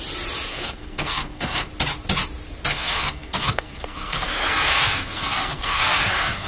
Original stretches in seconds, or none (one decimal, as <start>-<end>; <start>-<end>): 0.0-0.5; 1.7-2.7